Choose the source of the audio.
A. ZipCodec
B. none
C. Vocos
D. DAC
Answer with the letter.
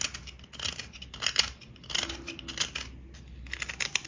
B